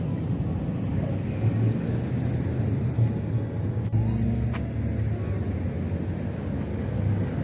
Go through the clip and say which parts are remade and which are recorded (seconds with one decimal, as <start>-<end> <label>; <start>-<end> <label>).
0.0-0.9 recorded; 0.9-2.0 remade; 2.0-6.7 recorded; 6.7-7.4 remade